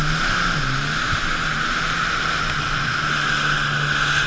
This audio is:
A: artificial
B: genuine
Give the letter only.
B